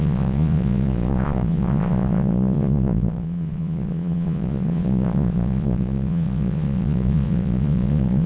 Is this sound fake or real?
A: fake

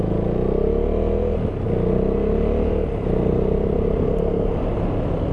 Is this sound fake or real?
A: real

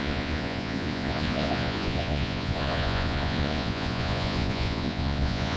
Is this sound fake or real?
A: fake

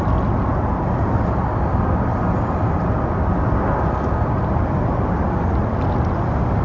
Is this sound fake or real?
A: real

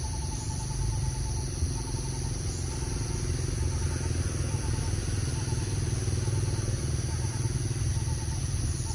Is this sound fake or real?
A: real